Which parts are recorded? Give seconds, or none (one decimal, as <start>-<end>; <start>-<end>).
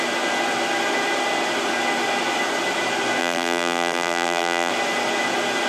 0.0-3.2; 4.7-5.7